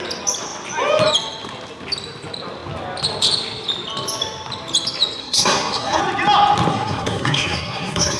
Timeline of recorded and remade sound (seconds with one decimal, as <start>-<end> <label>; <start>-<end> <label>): 0.0-5.2 recorded; 5.2-6.0 remade; 6.0-6.7 recorded; 6.7-8.2 remade